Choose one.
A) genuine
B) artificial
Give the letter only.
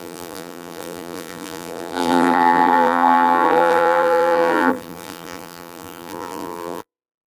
B